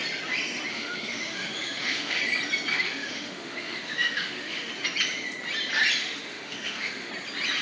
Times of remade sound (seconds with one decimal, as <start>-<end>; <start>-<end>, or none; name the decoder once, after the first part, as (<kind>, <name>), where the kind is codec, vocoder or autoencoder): 0.7-2.2 (autoencoder, DAC-VAE); 2.7-4.7; 6.0-7.1